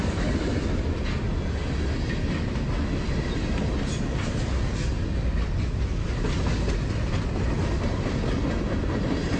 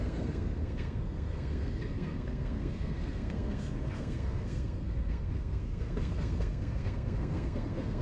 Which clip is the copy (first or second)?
second